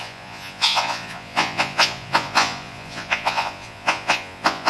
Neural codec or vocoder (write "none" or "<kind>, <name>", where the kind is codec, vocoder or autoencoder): vocoder, Vocos